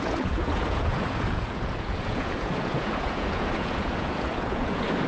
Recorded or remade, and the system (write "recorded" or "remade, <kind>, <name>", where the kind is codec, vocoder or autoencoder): remade, vocoder, Vocos